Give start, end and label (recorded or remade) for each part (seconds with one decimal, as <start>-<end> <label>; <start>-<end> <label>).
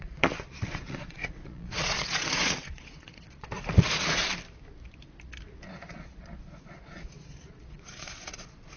0.0-4.2 remade; 4.2-5.7 recorded; 5.7-8.8 remade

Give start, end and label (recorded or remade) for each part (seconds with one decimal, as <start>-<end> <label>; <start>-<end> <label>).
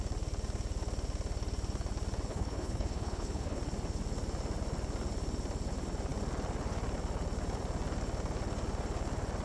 0.0-2.3 recorded; 2.3-3.6 remade; 3.6-9.4 recorded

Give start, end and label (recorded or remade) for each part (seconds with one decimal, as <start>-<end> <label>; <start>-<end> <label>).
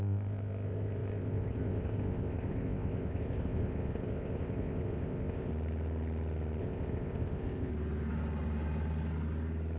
0.0-5.5 remade; 5.5-6.6 recorded; 6.6-7.7 remade; 7.7-9.8 recorded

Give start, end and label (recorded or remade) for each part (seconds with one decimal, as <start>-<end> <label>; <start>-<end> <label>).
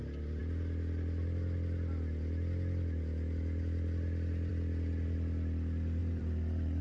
0.0-6.0 recorded; 6.0-6.8 remade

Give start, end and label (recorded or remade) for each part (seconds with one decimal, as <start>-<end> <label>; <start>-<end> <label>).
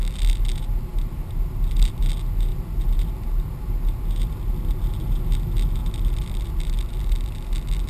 0.0-0.9 recorded; 0.9-2.0 remade; 2.0-5.8 recorded; 5.8-6.4 remade; 6.4-7.9 recorded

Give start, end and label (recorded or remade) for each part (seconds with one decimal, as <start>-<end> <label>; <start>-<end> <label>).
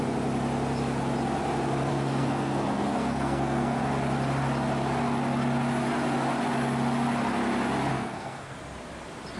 0.0-1.9 recorded; 1.9-3.8 remade; 3.8-7.9 recorded; 7.9-8.5 remade; 8.5-9.4 recorded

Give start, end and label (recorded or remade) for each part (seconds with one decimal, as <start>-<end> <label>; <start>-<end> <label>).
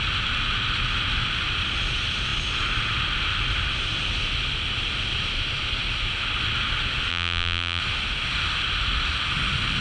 0.0-7.1 recorded; 7.1-7.8 remade; 7.8-9.8 recorded